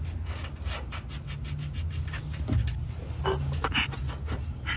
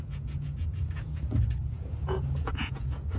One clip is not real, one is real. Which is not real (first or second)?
second